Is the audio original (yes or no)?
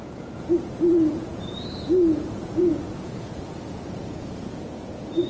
no